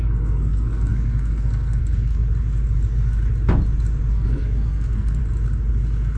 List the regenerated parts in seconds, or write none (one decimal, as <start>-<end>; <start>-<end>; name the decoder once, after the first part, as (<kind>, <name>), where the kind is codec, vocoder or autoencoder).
0.0-2.2 (codec, SNAC); 4.1-5.2